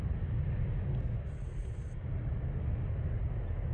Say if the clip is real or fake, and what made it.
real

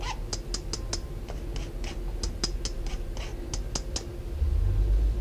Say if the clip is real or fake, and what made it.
real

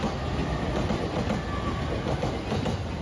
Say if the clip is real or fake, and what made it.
real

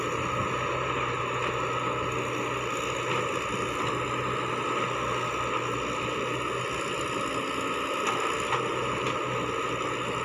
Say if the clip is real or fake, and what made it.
real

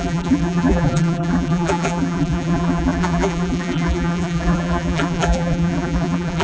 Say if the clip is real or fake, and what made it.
fake, vocoder, BigVGAN v2